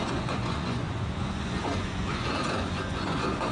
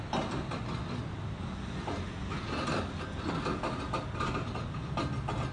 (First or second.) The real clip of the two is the second